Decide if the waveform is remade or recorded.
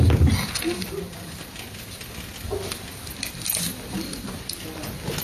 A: remade